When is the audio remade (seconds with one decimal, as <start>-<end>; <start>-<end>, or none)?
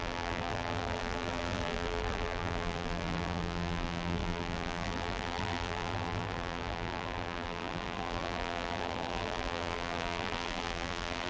0.0-11.3